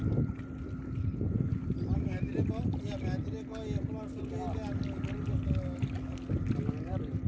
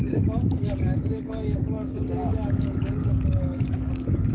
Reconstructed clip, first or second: second